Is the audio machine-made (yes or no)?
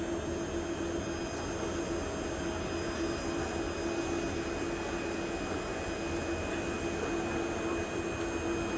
no